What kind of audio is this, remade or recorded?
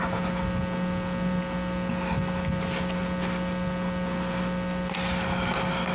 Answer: recorded